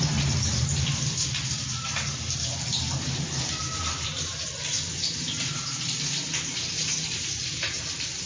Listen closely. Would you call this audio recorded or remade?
remade